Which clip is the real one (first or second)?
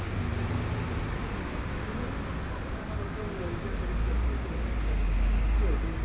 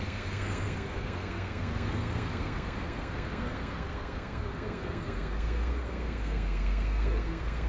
first